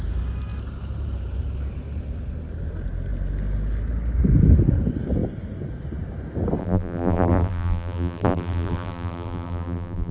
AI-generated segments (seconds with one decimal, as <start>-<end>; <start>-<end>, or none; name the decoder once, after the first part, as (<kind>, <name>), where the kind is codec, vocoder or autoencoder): 6.6-10.1 (vocoder, BigVGAN v2)